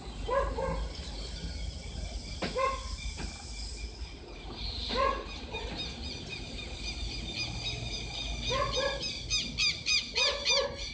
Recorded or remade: recorded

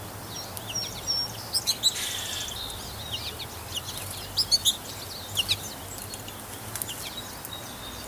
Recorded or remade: recorded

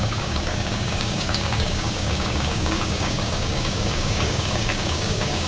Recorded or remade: remade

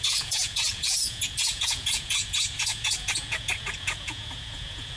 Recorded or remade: remade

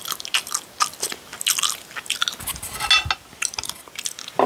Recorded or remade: recorded